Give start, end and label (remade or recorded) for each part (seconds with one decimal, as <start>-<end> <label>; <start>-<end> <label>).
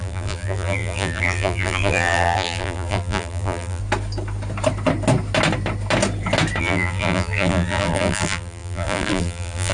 0.0-3.8 remade; 3.8-6.6 recorded; 6.6-9.7 remade